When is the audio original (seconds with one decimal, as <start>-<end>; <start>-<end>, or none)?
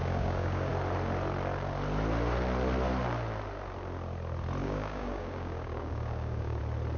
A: 0.7-4.6; 6.6-7.0